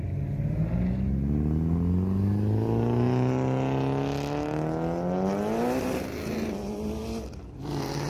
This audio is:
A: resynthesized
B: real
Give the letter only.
B